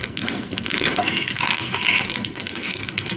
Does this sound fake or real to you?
fake